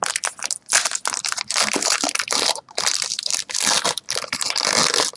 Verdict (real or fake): real